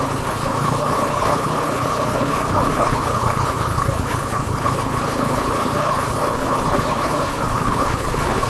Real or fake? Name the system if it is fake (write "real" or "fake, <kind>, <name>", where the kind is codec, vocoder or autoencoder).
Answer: fake, codec, HILCodec